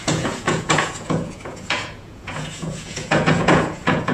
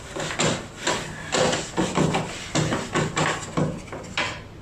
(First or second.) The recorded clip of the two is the second